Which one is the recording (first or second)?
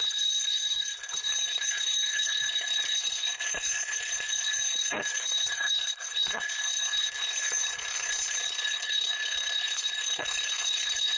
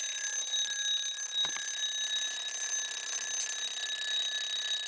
second